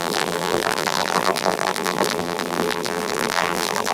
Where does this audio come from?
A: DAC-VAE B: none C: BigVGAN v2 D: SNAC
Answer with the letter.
C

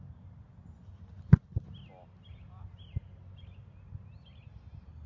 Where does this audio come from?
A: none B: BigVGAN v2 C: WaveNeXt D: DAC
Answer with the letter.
A